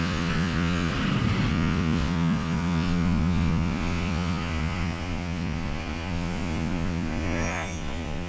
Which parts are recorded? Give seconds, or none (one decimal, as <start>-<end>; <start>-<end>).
0.9-1.5